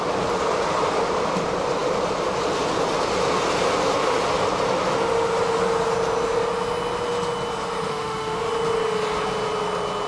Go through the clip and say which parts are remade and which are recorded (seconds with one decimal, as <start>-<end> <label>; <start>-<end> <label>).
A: 0.0-7.9 recorded; 7.9-8.5 remade; 8.5-10.1 recorded